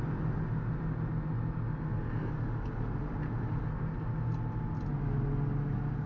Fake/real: real